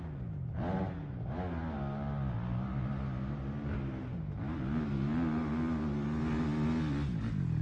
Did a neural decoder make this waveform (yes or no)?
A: no